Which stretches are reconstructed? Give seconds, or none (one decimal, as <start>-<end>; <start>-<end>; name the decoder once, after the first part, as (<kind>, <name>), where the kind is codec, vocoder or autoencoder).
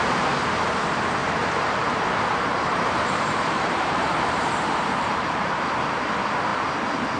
1.2-5.5 (vocoder, BigVGAN v2)